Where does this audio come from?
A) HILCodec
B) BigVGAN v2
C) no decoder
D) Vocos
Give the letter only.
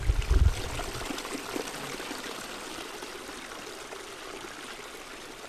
C